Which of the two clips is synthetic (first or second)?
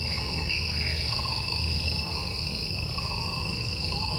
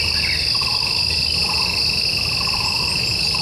first